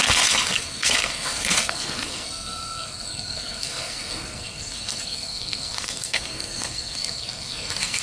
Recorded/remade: remade